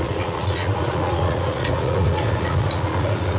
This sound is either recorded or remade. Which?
remade